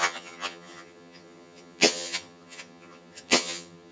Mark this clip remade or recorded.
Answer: remade